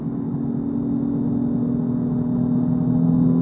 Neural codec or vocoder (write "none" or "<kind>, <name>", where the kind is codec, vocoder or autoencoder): none